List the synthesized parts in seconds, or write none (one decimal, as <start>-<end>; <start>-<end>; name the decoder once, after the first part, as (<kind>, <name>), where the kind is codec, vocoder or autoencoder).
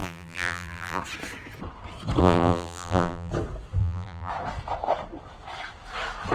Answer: 0.0-1.0 (vocoder, BigVGAN v2); 2.2-3.3; 3.8-4.3